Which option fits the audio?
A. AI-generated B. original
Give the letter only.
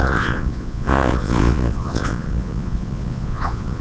A